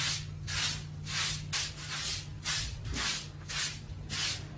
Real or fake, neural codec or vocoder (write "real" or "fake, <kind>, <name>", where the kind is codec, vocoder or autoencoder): real